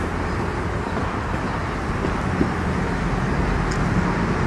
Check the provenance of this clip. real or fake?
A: real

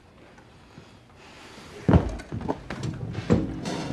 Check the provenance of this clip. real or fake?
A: real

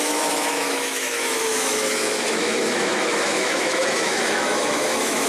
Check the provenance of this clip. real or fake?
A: fake